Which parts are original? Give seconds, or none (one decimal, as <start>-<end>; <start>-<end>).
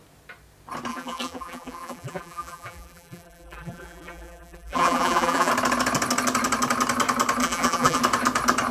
0.0-0.9; 5.5-7.4; 8.0-8.7